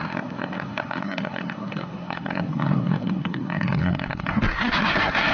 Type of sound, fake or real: fake